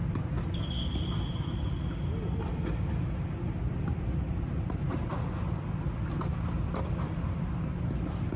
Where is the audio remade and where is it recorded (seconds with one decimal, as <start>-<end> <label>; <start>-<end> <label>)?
0.0-8.4 recorded